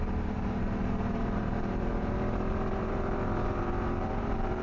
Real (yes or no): no